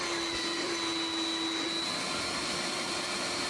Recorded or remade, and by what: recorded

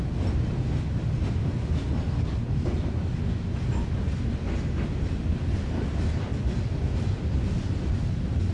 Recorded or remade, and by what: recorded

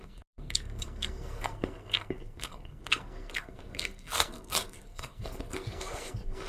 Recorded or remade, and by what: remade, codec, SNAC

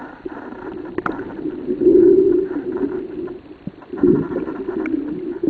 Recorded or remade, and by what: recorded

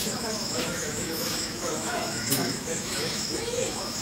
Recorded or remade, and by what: remade, autoencoder, DAC-VAE